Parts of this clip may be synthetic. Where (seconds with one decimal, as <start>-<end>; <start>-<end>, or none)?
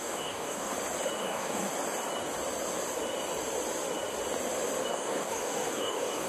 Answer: 0.0-0.7; 1.2-1.6; 4.9-6.3